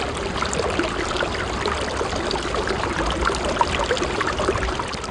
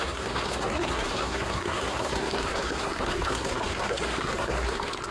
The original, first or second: first